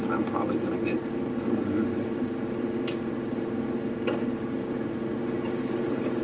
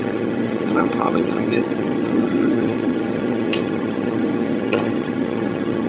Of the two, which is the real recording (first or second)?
first